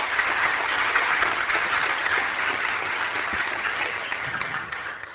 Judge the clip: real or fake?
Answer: fake